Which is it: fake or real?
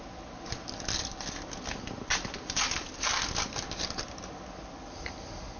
real